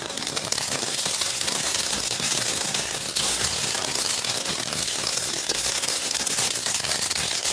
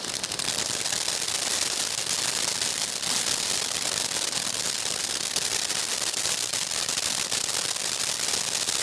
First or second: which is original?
second